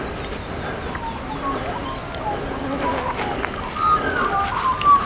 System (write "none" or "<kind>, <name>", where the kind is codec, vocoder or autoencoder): none